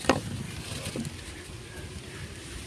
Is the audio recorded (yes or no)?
yes